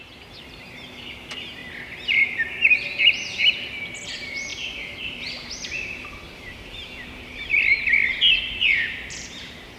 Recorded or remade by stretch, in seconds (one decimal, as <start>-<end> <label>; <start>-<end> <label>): 0.0-1.6 remade; 1.6-4.1 recorded; 4.1-7.5 remade; 7.5-8.5 recorded; 8.5-9.8 remade